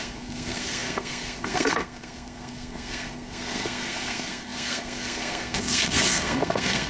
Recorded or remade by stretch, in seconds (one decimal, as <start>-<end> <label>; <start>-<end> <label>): 0.0-6.9 remade